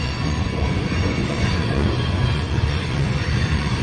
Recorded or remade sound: remade